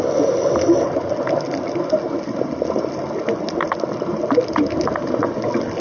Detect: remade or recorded recorded